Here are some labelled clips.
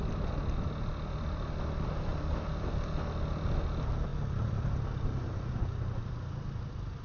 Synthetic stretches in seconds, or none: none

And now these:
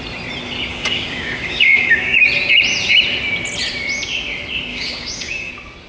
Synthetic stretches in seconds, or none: 0.7-2.2 (codec, DAC); 4.7-5.5

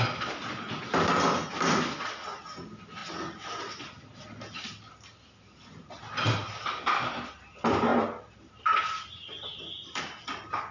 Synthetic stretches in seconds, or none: none

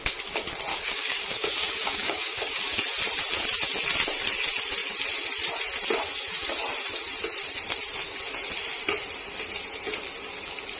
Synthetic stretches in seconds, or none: 0.7-2.8 (codec, DAC)

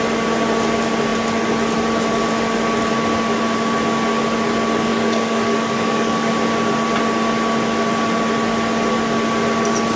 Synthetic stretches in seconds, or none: 4.9-6.3 (codec, DAC)

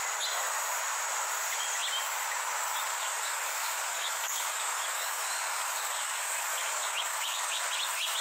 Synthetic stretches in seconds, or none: 2.9-7.6 (codec, DAC)

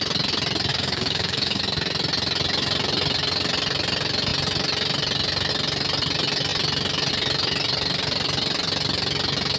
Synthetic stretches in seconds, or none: 0.7-1.6 (codec, DAC)

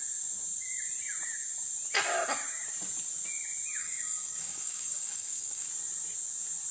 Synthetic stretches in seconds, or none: 3.8-5.7 (codec, DAC)